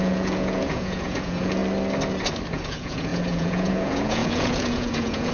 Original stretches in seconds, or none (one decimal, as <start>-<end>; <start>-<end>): 1.6-2.5